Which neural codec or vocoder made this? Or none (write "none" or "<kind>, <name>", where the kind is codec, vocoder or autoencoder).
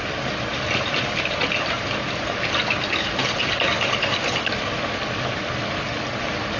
none